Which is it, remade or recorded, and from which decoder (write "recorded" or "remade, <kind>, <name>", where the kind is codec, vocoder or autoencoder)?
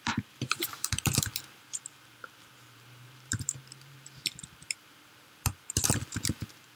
remade, vocoder, BigVGAN v2